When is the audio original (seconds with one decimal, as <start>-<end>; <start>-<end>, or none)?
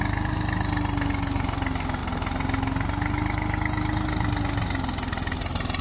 0.0-5.8